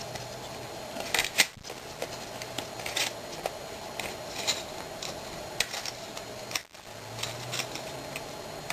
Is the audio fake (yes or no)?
no